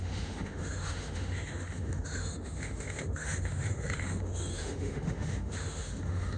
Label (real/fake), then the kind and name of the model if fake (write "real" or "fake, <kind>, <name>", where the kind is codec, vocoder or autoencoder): fake, autoencoder, DAC-VAE